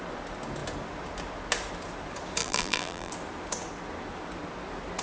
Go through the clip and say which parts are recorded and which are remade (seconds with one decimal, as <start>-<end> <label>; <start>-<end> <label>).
0.0-2.4 recorded; 2.4-3.1 remade; 3.1-5.0 recorded

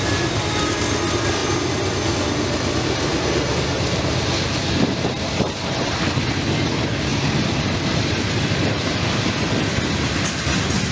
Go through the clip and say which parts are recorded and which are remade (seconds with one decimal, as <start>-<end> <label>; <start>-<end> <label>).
0.0-10.9 recorded

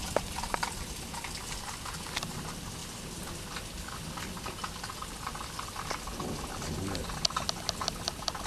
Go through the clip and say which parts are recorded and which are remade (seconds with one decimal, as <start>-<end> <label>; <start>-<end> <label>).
0.0-8.5 recorded

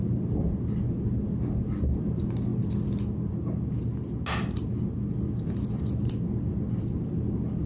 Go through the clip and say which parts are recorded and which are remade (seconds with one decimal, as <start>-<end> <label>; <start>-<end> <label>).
0.0-7.7 recorded

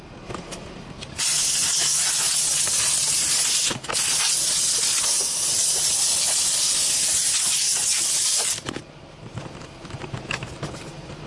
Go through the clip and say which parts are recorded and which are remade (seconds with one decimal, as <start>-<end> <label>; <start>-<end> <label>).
0.0-7.9 recorded; 7.9-8.8 remade; 8.8-11.3 recorded